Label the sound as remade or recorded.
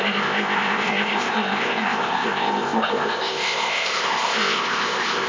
remade